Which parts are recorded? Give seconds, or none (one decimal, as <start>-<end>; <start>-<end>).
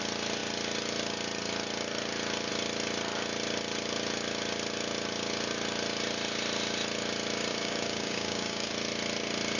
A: 0.0-7.5; 8.7-9.6